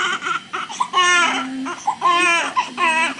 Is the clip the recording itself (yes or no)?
yes